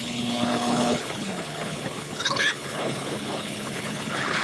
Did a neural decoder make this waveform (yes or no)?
yes